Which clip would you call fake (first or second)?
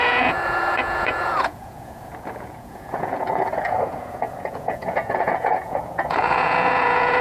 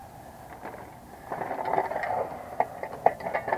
first